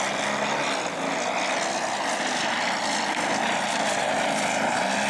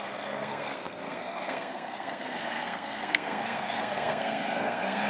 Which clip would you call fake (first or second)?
second